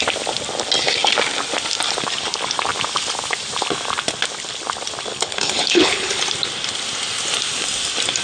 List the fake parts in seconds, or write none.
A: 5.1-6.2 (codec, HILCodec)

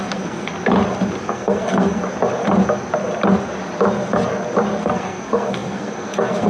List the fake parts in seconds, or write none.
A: 0.0-0.5 (codec, SNAC); 1.2-2.0; 4.8-6.5

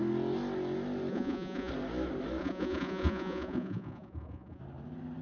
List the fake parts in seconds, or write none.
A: 1.1-1.7 (vocoder, Vocos); 2.4-4.6

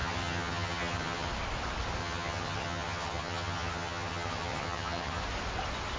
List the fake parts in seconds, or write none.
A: 0.0-1.3 (vocoder, HiFi-GAN); 2.0-5.2